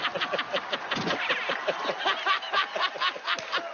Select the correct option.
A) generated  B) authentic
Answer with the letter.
B